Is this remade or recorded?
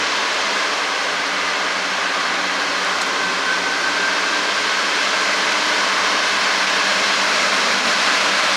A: recorded